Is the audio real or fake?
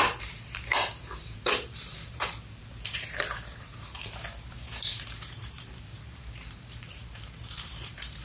fake